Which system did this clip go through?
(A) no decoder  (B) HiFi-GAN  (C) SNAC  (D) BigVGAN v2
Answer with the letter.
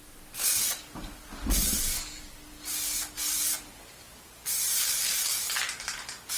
A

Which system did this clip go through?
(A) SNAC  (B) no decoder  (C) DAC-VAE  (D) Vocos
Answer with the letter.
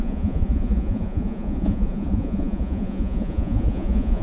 D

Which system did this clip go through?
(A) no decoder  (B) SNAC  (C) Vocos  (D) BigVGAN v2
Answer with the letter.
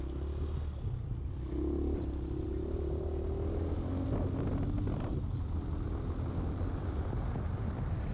A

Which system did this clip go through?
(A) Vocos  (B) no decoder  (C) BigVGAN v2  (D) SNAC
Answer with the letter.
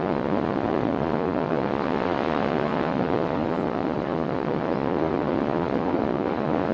A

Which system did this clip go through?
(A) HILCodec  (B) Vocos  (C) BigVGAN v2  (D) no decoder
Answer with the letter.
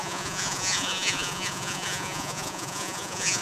B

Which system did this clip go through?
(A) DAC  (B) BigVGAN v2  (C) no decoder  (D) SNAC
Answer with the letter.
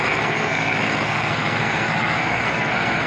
D